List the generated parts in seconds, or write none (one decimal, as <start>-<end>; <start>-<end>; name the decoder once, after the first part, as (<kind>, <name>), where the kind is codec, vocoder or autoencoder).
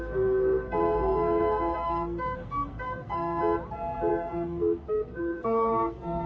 0.0-3.4 (codec, SNAC); 4.1-6.3